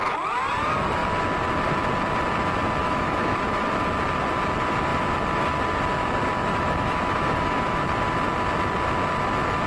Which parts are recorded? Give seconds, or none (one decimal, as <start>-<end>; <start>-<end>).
0.0-2.8; 3.7-6.5; 7.8-9.7